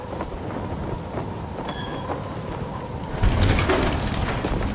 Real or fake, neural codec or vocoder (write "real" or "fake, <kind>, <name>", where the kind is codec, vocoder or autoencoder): real